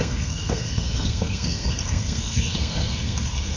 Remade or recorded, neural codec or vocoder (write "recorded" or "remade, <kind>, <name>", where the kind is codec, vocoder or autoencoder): remade, codec, SNAC